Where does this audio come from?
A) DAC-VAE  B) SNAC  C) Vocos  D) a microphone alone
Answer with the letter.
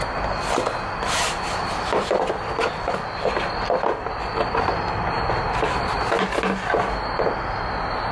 D